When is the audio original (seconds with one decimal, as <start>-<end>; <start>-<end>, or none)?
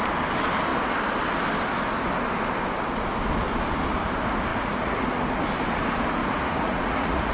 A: 0.0-4.5; 5.3-6.2